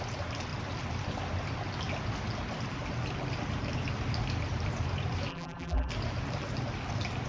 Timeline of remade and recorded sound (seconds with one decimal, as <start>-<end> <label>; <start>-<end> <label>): 0.0-5.3 recorded; 5.3-5.9 remade; 5.9-7.3 recorded